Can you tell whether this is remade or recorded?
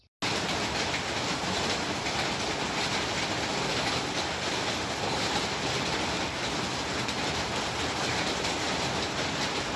recorded